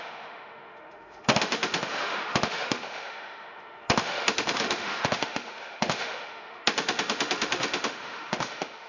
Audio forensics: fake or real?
fake